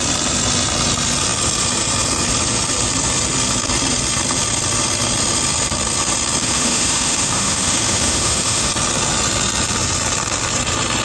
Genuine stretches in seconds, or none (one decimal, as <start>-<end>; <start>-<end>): 0.0-6.4; 8.7-11.0